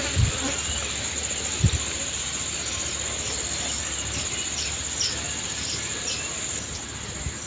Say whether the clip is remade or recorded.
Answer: recorded